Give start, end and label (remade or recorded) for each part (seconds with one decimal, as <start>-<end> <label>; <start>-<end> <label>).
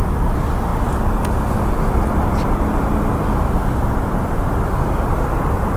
0.0-5.8 recorded